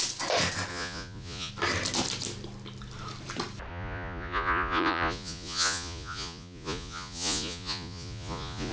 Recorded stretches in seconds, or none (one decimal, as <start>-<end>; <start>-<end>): 0.0-0.7; 1.5-3.7